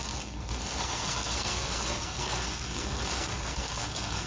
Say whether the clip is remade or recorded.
remade